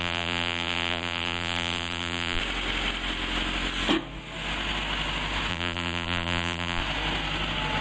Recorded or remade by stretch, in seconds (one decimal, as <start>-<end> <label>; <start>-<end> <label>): 0.0-2.4 remade; 2.4-5.5 recorded; 5.5-6.8 remade; 6.8-7.8 recorded